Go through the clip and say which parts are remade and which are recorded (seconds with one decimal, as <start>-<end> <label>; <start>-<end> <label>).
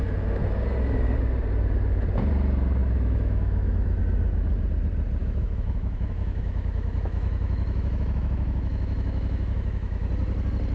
0.0-2.8 recorded; 2.8-4.0 remade; 4.0-5.2 recorded; 5.2-10.1 remade; 10.1-10.7 recorded